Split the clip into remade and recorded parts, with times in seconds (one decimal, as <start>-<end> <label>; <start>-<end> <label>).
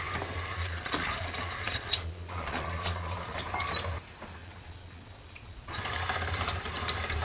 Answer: 0.0-0.5 recorded; 0.5-3.4 remade; 3.4-4.4 recorded; 4.4-5.8 remade; 5.8-7.2 recorded